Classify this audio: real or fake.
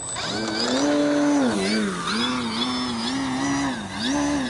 real